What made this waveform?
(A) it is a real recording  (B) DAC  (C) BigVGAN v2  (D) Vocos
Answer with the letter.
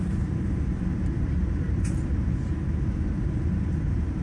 C